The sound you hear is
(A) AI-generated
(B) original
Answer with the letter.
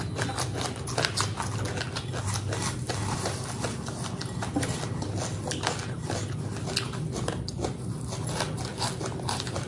B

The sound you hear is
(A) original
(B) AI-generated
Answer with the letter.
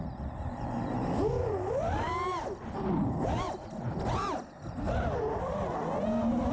A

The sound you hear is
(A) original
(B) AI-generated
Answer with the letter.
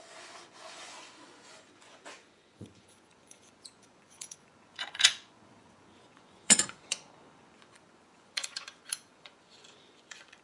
B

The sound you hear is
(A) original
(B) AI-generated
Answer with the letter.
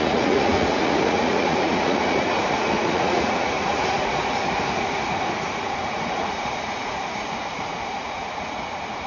B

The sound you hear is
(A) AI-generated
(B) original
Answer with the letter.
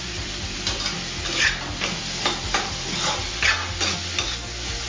B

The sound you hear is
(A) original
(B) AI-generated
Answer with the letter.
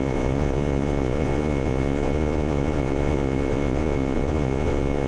B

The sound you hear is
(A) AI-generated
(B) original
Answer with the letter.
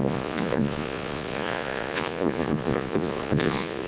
A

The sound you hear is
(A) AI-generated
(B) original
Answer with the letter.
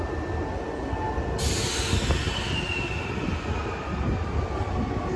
B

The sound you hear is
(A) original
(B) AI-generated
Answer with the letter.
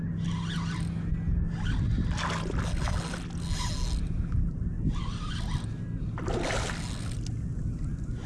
A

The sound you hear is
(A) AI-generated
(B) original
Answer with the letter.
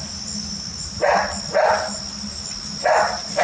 B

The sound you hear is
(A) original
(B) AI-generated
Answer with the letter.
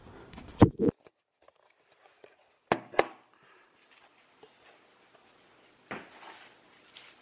A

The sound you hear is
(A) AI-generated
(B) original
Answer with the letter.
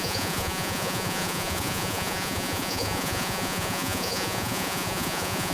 A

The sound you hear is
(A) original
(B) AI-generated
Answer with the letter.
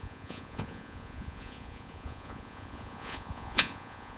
B